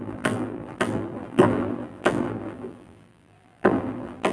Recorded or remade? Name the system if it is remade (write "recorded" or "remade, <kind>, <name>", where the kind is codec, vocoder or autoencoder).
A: remade, vocoder, BigVGAN v2